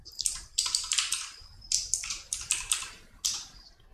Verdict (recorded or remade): recorded